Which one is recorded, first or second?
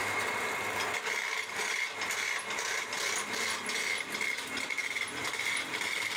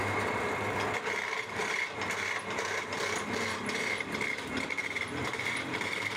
first